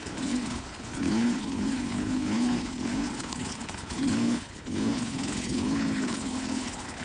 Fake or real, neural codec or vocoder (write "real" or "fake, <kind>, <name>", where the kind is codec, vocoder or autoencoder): fake, codec, HILCodec